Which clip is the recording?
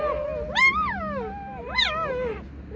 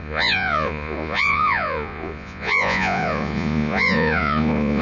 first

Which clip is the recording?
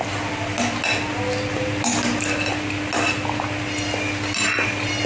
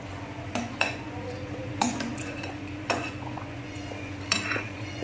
first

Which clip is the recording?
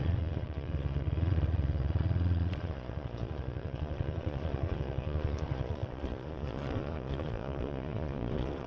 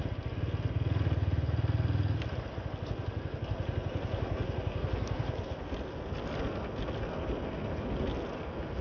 second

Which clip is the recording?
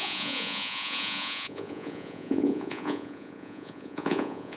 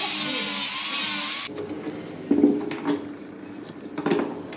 second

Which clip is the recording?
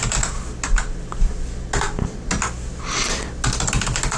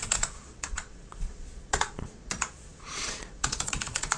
first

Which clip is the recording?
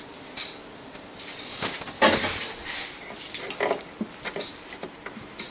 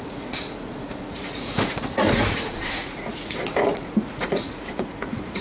first